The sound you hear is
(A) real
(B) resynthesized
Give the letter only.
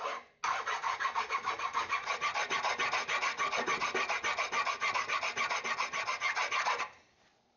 A